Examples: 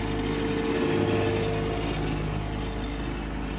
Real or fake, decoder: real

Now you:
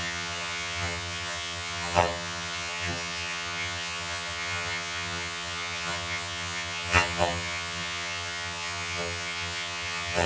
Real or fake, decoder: fake, vocoder, HiFi-GAN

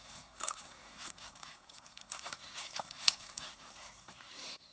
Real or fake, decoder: fake, codec, SNAC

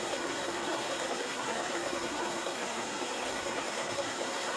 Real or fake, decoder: fake, codec, SNAC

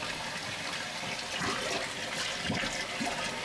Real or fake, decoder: real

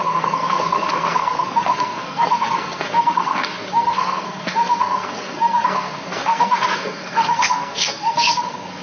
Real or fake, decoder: fake, codec, SNAC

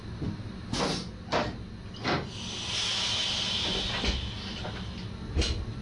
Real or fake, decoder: real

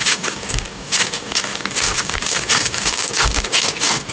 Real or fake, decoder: fake, codec, DAC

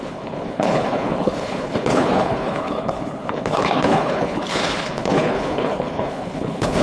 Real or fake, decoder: fake, codec, HILCodec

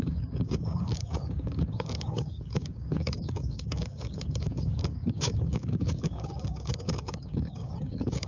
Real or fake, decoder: fake, codec, DAC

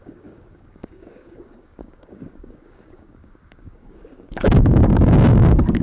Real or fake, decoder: fake, codec, DAC